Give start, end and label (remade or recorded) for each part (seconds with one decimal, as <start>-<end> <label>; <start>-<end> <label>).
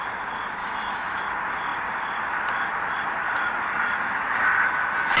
0.0-0.6 recorded; 0.6-1.2 remade; 1.2-5.2 recorded